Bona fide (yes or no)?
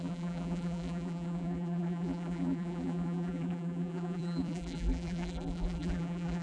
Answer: no